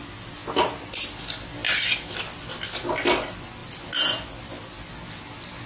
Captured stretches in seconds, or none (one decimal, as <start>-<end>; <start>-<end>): 0.0-5.7